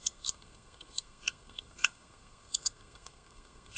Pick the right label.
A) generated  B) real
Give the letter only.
A